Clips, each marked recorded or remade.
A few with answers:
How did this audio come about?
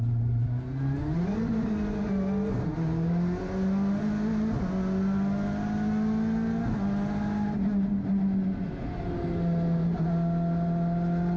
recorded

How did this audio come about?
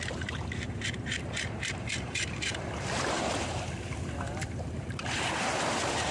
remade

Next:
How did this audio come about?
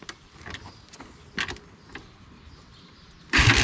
recorded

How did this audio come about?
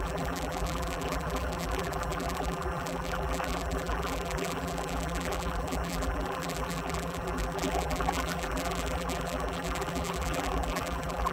remade